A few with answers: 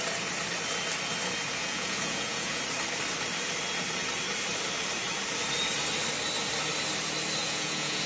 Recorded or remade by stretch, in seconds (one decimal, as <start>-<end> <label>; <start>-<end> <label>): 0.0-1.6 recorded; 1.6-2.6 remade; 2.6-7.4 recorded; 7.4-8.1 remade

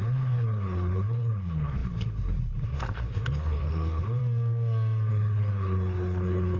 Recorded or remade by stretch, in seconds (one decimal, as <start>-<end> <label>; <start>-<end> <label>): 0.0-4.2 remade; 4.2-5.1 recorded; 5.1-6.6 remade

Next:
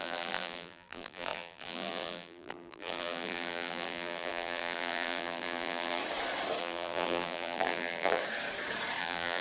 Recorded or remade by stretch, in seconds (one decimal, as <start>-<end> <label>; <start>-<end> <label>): 0.0-6.0 remade; 6.0-6.6 recorded; 6.6-8.2 remade; 8.2-9.0 recorded; 9.0-9.4 remade

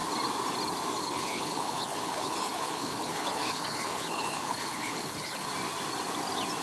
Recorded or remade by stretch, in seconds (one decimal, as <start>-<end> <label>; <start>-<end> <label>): 0.0-1.0 recorded; 1.0-5.5 remade; 5.5-6.6 recorded